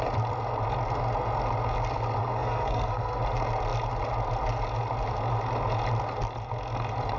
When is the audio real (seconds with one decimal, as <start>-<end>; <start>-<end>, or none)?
0.0-2.2; 3.2-7.2